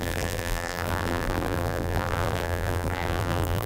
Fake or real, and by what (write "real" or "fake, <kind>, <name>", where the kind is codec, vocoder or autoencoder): fake, vocoder, BigVGAN v2